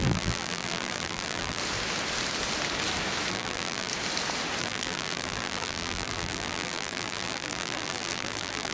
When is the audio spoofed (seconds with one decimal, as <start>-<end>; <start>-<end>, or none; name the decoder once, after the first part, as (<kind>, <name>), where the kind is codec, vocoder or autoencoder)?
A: 0.0-1.6 (vocoder, BigVGAN v2); 3.3-3.9; 4.6-8.7